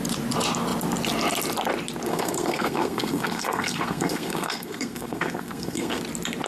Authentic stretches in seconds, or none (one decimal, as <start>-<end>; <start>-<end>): 0.0-2.1; 6.0-6.5